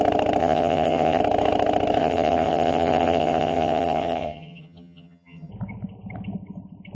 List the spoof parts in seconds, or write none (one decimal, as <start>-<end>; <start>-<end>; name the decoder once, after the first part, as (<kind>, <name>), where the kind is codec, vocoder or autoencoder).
0.4-1.2 (vocoder, HiFi-GAN); 2.0-5.5